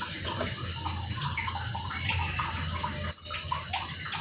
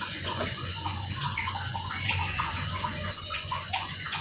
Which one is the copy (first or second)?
second